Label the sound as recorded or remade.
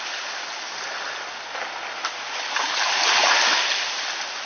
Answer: recorded